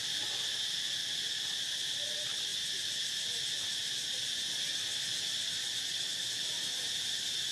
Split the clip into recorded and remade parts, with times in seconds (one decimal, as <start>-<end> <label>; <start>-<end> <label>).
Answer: 0.0-2.5 remade; 2.5-3.5 recorded; 3.5-6.1 remade; 6.1-6.7 recorded; 6.7-7.5 remade